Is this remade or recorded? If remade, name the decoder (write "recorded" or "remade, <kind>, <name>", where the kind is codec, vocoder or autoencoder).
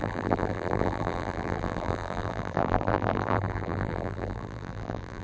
remade, vocoder, BigVGAN v2